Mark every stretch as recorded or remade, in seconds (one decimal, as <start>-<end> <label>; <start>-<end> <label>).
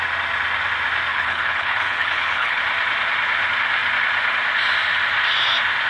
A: 0.0-1.1 recorded; 1.1-2.6 remade; 2.6-5.9 recorded